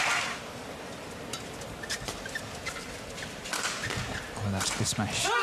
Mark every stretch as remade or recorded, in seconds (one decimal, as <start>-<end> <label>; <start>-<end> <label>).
0.0-5.4 recorded

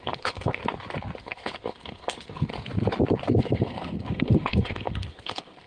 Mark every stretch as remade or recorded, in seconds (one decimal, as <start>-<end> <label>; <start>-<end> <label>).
0.0-0.6 remade; 0.6-1.2 recorded; 1.2-2.5 remade; 2.5-3.3 recorded; 3.3-5.7 remade

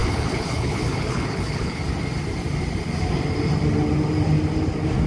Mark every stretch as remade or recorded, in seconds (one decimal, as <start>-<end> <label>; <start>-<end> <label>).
0.0-1.8 remade; 1.8-5.1 recorded

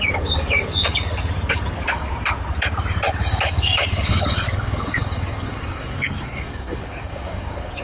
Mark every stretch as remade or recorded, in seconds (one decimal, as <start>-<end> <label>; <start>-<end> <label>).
0.0-2.1 remade; 2.1-3.2 recorded; 3.2-7.8 remade

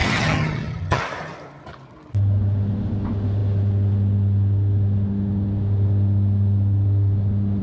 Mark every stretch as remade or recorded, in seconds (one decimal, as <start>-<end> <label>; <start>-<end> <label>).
0.0-1.0 remade; 1.0-7.6 recorded

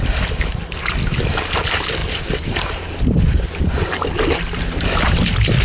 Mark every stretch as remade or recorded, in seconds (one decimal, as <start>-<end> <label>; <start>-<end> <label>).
0.0-5.6 recorded

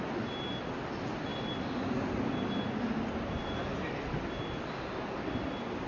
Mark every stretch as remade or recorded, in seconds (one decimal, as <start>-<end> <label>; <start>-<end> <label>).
0.0-5.9 recorded